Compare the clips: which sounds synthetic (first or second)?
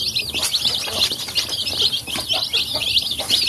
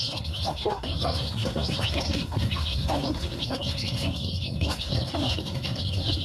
second